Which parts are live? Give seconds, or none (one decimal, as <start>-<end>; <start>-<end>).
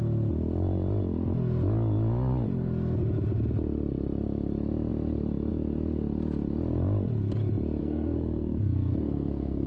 0.0-7.8